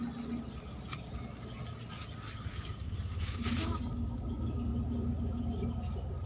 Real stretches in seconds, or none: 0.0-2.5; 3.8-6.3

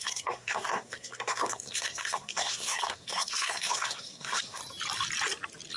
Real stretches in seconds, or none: 4.6-5.8

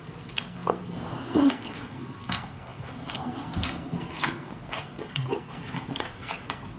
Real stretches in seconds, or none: none

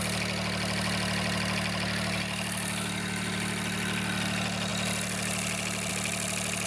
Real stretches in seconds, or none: 0.0-6.7

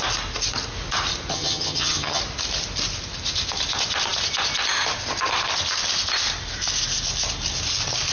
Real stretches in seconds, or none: 0.0-1.3; 2.2-8.1

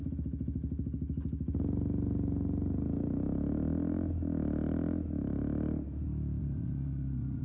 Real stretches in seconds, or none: 0.0-6.4

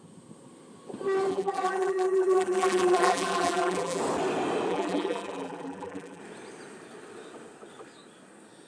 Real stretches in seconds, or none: 0.0-1.3; 4.0-4.7; 6.2-8.7